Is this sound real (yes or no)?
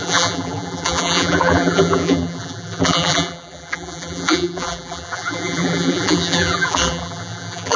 no